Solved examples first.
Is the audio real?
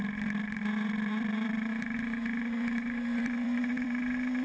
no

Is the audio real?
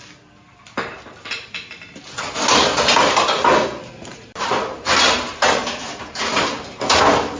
yes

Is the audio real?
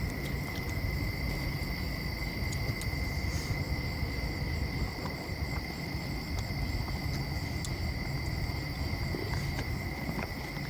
yes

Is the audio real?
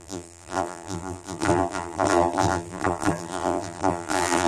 no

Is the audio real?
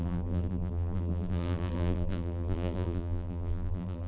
no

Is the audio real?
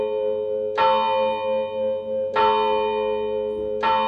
yes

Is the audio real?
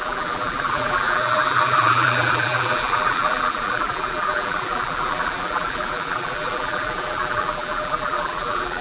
no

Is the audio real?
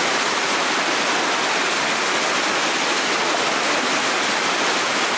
yes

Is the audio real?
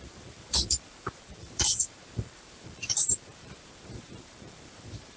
no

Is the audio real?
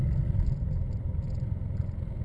no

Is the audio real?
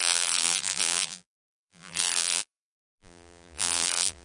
no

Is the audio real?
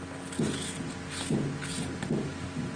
yes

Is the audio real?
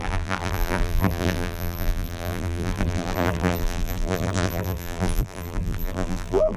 no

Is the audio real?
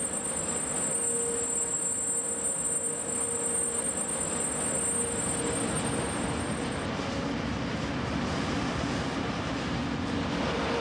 yes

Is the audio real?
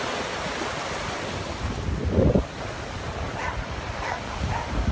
no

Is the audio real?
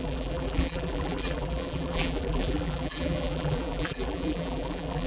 no